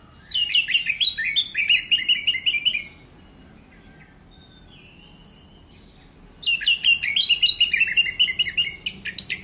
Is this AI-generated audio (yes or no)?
no